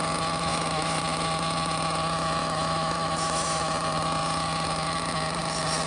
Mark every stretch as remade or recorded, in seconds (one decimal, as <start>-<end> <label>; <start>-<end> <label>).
0.0-0.5 recorded; 0.5-1.0 remade; 1.0-2.4 recorded; 2.4-3.6 remade; 3.6-5.9 recorded